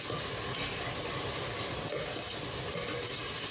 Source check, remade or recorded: recorded